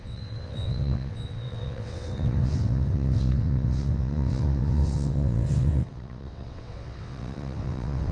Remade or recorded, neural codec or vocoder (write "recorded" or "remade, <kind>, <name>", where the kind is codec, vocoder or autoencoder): remade, vocoder, WaveNeXt